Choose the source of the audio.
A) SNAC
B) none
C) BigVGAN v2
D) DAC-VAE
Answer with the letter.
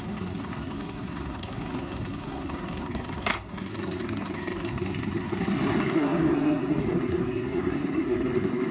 A